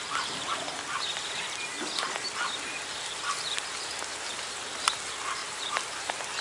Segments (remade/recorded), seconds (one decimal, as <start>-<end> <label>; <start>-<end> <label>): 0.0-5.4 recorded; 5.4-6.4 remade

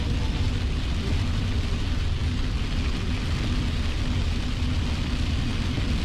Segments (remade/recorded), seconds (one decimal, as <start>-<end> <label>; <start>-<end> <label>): 0.0-6.0 recorded

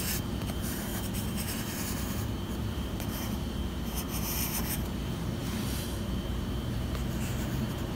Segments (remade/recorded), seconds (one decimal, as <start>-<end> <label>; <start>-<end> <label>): 0.0-7.9 remade

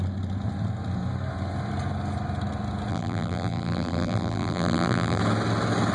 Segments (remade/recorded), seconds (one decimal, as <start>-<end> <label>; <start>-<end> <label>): 0.0-2.9 recorded; 2.9-5.2 remade; 5.2-5.9 recorded

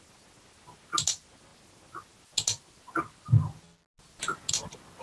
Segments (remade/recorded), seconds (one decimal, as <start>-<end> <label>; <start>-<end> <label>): 0.0-5.0 recorded

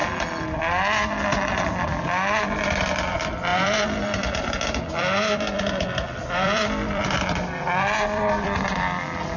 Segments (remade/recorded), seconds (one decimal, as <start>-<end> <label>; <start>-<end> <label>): 0.0-2.4 recorded; 2.4-9.4 remade

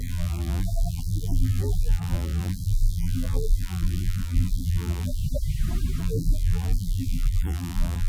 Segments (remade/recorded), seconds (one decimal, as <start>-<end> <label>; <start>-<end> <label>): 0.0-5.2 remade; 5.2-6.0 recorded; 6.0-8.1 remade